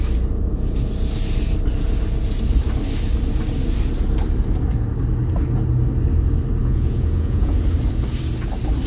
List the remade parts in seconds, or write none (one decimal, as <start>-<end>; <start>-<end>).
6.6-7.5